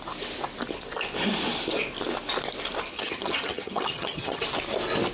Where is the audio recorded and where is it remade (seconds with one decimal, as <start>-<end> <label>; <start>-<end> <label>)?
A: 0.0-2.9 recorded; 2.9-4.4 remade; 4.4-5.1 recorded